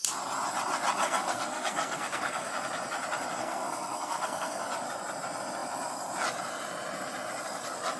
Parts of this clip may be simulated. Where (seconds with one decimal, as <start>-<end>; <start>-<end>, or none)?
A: 1.0-2.5; 3.4-4.6